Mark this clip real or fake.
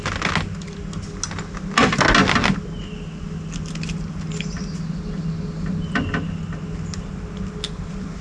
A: real